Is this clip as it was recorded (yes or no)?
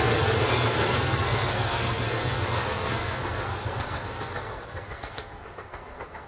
no